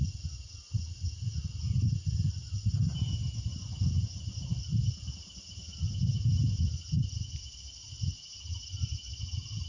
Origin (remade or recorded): recorded